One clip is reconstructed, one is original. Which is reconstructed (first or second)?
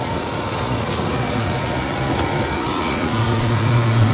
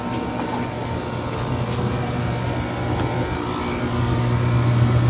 first